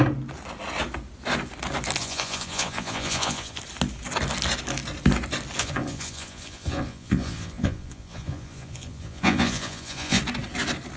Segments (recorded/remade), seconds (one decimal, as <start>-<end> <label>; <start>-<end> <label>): 0.0-2.0 recorded; 2.0-3.6 remade; 3.6-5.6 recorded; 5.6-10.2 remade; 10.2-11.0 recorded